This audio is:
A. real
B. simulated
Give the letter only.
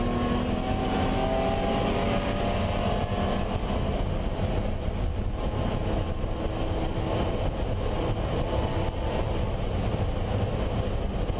A